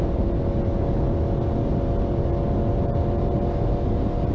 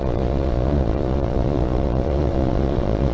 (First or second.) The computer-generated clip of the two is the second